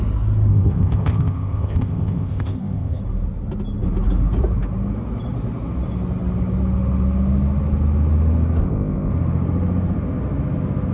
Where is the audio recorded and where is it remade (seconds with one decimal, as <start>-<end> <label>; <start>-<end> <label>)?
0.0-0.5 recorded; 0.5-3.0 remade; 3.0-8.6 recorded; 8.6-9.1 remade; 9.1-10.9 recorded